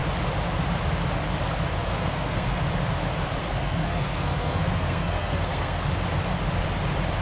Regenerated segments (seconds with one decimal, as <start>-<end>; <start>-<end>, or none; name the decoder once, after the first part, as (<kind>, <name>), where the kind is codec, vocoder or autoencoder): 1.9-2.6 (codec, SNAC); 3.4-5.8